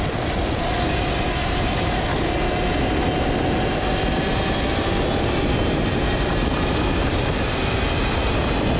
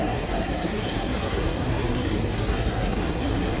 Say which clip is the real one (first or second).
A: first